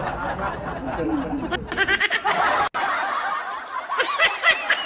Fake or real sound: real